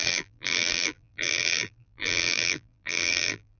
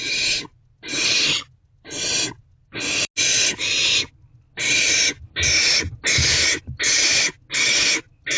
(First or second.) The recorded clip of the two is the second